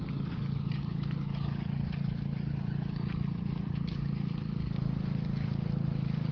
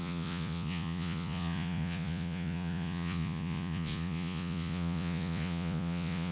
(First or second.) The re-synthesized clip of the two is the second